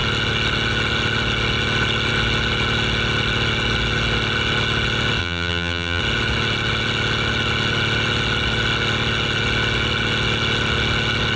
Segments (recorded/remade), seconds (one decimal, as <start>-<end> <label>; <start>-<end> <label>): 0.0-5.2 recorded; 5.2-6.0 remade; 6.0-11.4 recorded